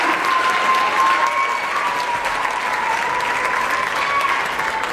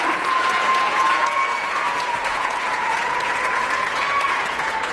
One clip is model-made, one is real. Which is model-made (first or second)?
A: second